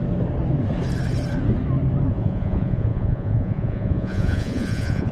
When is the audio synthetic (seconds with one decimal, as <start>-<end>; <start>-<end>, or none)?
2.1-5.1